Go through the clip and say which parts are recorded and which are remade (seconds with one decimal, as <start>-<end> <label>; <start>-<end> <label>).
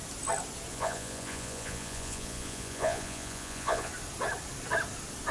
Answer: 0.0-0.7 recorded; 0.7-3.9 remade; 3.9-5.3 recorded